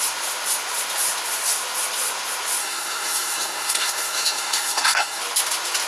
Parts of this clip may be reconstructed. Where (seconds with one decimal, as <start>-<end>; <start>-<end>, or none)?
2.6-5.2